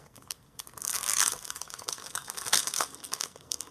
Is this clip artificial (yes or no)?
yes